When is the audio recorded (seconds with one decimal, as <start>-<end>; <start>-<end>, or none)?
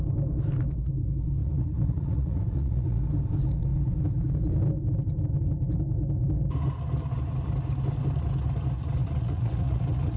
0.0-1.4; 3.0-9.0